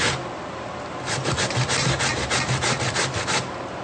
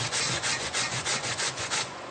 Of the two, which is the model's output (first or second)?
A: second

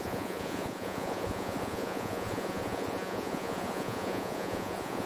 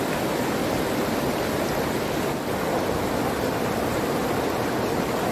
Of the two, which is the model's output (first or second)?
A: first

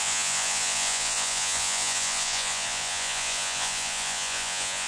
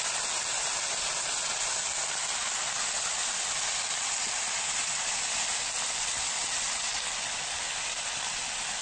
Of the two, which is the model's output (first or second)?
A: first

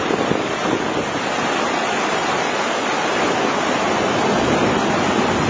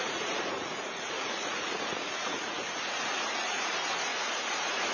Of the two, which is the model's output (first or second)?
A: second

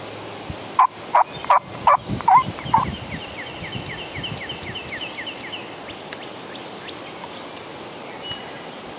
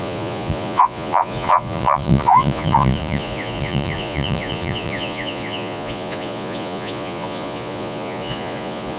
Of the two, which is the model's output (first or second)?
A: second